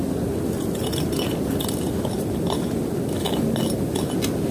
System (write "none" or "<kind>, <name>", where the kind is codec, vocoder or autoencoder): none